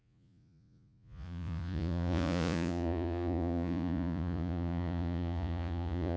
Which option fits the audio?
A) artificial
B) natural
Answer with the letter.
A